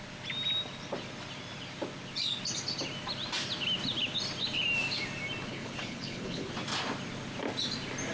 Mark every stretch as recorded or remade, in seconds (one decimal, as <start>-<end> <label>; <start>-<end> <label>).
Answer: 0.0-5.5 recorded; 5.5-6.5 remade; 6.5-8.1 recorded